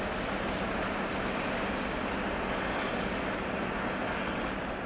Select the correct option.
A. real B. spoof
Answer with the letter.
A